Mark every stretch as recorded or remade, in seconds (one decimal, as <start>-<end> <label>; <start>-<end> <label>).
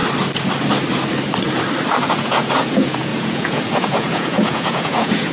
0.0-2.1 recorded; 2.1-5.3 remade